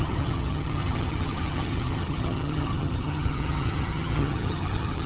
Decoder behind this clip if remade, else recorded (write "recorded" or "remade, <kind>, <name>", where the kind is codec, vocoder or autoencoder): remade, vocoder, HiFi-GAN